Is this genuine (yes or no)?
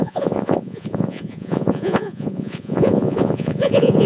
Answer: no